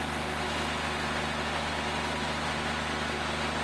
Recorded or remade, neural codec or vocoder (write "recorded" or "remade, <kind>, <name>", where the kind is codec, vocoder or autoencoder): recorded